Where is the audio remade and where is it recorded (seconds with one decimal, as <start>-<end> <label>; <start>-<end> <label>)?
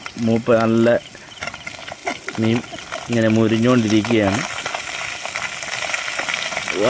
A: 0.0-6.9 recorded